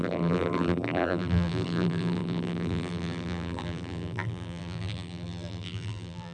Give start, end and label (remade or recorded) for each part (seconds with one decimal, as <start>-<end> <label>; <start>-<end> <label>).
0.0-6.3 remade